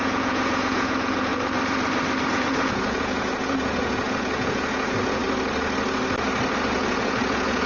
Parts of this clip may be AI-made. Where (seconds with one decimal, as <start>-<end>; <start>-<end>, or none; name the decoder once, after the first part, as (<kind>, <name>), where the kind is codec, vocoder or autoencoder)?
0.0-1.3 (vocoder, Vocos); 2.3-5.2; 6.6-7.7